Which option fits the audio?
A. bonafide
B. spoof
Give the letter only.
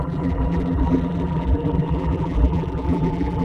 B